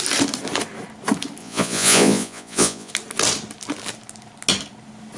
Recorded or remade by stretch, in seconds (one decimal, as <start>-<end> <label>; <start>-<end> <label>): 0.0-1.4 recorded; 1.4-2.9 remade; 2.9-5.2 recorded